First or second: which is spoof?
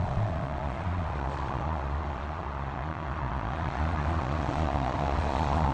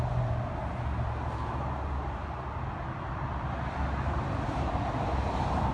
first